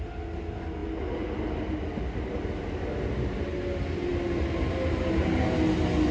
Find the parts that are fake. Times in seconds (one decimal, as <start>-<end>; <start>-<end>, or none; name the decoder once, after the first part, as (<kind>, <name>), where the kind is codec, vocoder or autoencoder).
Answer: none